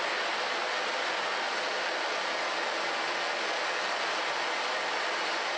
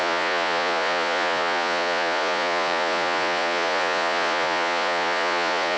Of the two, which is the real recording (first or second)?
first